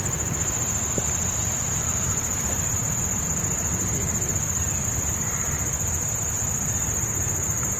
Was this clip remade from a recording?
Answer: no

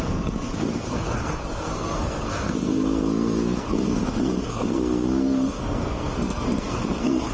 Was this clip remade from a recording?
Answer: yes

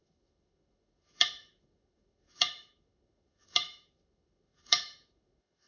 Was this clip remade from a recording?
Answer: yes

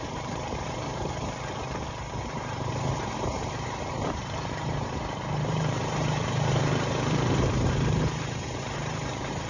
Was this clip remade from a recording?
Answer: yes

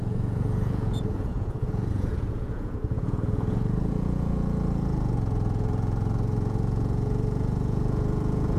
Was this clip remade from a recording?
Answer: yes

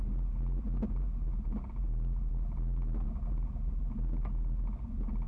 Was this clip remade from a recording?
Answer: no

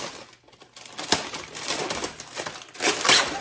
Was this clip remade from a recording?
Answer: no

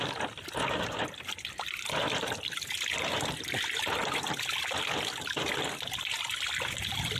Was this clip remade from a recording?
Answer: no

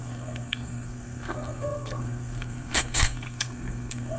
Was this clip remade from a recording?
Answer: yes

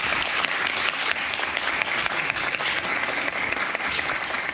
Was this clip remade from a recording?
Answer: yes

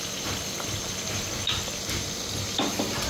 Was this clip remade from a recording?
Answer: no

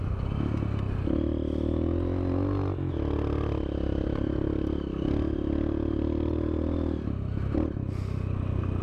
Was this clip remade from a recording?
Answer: no